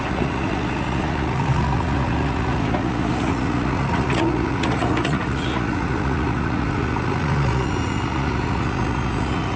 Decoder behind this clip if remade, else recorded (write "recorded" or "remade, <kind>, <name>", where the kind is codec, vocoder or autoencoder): remade, vocoder, Vocos